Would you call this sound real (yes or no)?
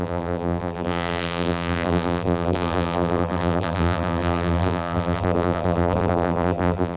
no